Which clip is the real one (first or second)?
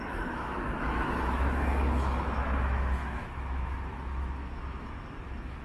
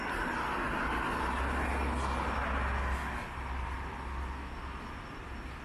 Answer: second